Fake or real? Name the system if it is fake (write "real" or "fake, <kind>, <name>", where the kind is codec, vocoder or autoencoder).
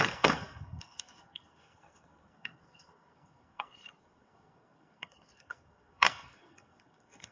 fake, codec, SNAC